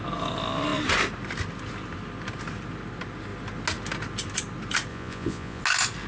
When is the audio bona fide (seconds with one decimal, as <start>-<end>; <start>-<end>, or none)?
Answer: 0.0-4.9; 5.6-6.1